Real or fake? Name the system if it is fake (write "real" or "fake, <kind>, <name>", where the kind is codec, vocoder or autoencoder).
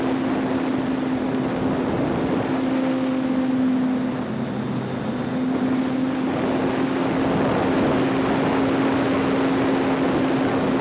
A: real